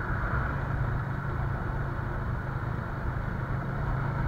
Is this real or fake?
real